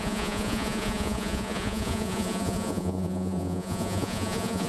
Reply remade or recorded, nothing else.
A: remade